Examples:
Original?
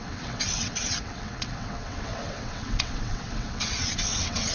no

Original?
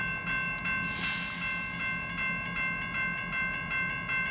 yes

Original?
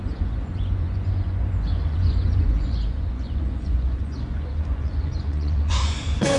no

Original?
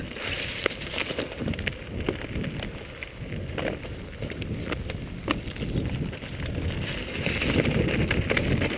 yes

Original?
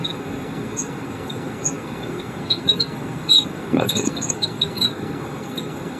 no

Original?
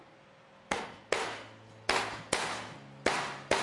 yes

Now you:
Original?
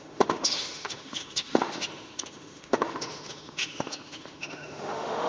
no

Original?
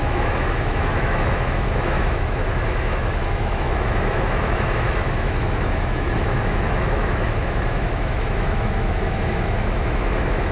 no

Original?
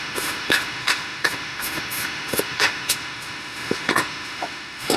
no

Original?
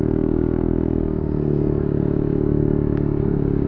no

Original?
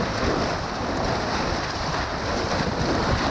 yes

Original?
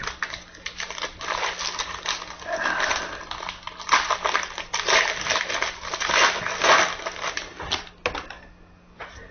yes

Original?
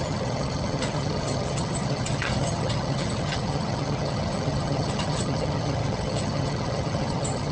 no